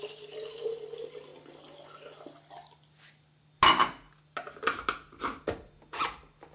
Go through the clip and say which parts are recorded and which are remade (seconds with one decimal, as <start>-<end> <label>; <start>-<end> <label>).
0.0-6.5 recorded